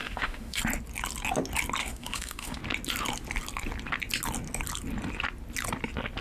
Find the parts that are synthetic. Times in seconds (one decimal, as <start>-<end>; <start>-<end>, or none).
0.0-0.6; 1.8-2.6